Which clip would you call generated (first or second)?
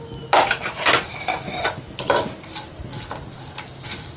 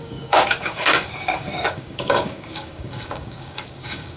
second